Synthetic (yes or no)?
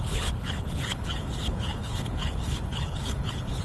yes